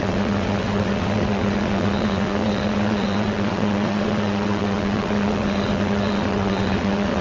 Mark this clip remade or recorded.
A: remade